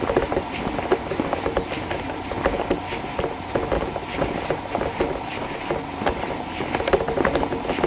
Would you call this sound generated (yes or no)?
no